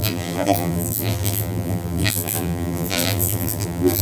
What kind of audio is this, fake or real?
fake